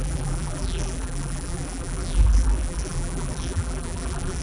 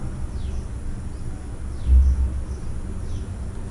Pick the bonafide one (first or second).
second